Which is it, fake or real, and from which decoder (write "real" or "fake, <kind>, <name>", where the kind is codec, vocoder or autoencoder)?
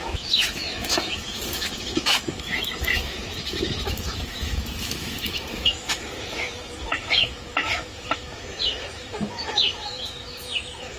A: fake, autoencoder, DAC-VAE